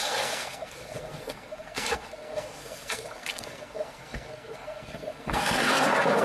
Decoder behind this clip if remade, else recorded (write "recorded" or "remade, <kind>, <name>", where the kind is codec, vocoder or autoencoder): remade, codec, SNAC